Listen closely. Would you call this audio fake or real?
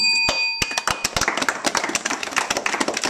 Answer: real